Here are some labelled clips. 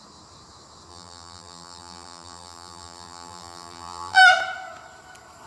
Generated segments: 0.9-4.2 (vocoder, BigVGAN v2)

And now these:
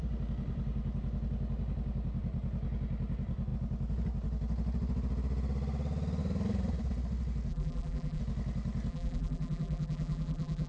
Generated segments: 7.5-8.2 (vocoder, BigVGAN v2); 8.9-10.7

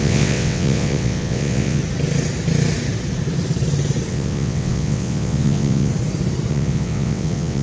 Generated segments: 0.0-1.8 (vocoder, WaveNeXt); 4.1-5.9; 6.5-7.6

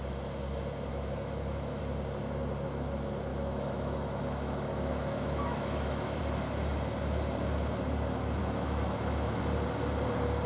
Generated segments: 0.9-1.8 (autoencoder, DAC-VAE); 3.3-6.2; 8.4-9.4